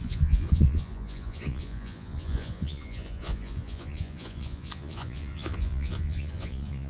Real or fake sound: fake